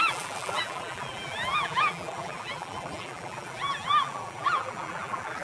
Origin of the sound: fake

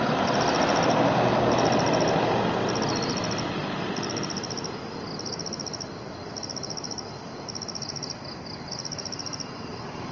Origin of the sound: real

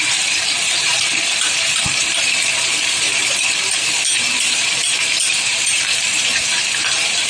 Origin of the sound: fake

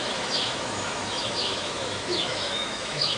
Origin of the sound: fake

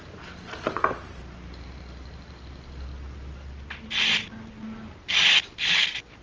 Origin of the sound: real